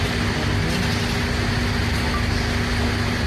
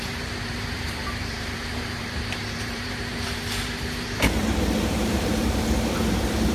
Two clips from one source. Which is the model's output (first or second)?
second